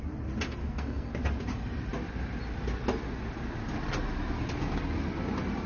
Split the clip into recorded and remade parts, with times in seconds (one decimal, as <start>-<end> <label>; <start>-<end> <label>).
0.0-0.6 recorded; 0.6-1.1 remade; 1.1-5.7 recorded